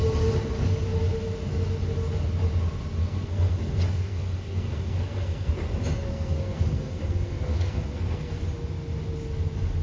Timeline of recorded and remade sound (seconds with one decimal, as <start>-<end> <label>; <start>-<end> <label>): 0.0-3.0 recorded; 3.0-5.5 remade; 5.5-6.1 recorded; 6.1-8.4 remade; 8.4-9.8 recorded

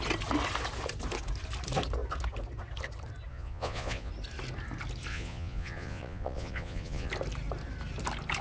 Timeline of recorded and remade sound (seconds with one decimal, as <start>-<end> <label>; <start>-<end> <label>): 0.0-3.3 recorded; 3.3-4.1 remade; 4.1-5.1 recorded; 5.1-7.1 remade; 7.1-8.4 recorded

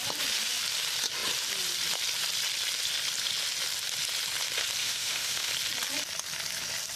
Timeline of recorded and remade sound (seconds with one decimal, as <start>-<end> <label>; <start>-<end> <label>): 0.0-4.8 recorded; 4.8-5.5 remade; 5.5-7.0 recorded

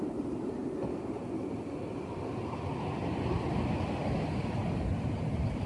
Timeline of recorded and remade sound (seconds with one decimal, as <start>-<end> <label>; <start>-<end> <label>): 0.0-0.6 remade; 0.6-4.0 recorded; 4.0-4.6 remade; 4.6-5.3 recorded; 5.3-5.7 remade

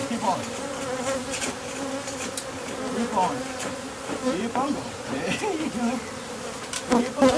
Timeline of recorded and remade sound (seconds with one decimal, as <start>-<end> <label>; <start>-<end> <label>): 0.0-4.4 recorded; 4.4-7.4 remade

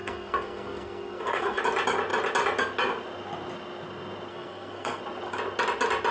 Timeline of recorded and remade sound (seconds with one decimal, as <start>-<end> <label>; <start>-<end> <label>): 0.0-1.6 remade; 1.6-4.3 recorded; 4.3-5.0 remade; 5.0-6.1 recorded

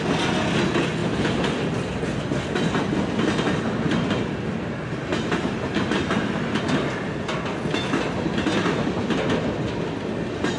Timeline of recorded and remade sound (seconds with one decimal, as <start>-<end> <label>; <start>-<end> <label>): 0.0-5.1 recorded; 5.1-6.8 remade; 6.8-10.6 recorded